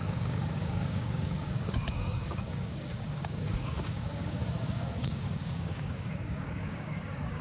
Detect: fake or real fake